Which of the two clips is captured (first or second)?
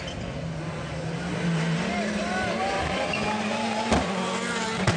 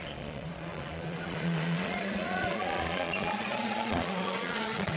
first